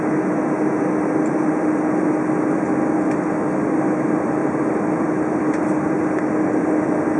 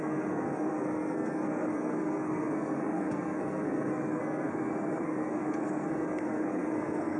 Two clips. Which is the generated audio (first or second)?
second